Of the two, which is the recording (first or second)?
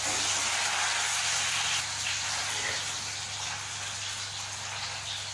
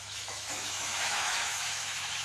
first